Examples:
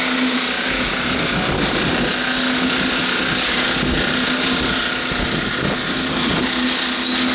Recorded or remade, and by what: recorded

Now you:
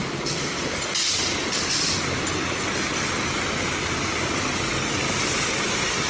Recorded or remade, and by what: recorded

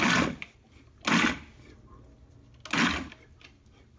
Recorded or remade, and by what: recorded